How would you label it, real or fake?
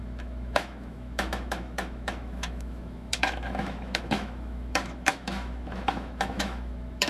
fake